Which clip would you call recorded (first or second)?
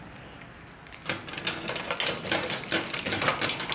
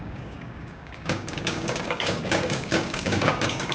first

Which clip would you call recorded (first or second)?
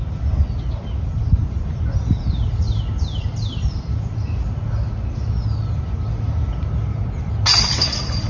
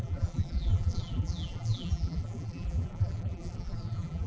first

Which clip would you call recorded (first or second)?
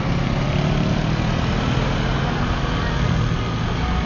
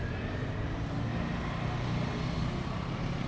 first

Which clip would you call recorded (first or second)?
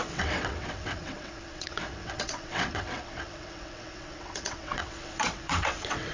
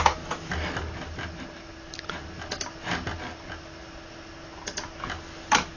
second